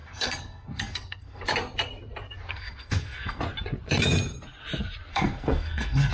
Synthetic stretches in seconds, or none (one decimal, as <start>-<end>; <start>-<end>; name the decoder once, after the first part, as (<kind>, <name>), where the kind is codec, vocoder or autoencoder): 0.0-1.4 (codec, SNAC); 2.5-3.4; 5.1-6.1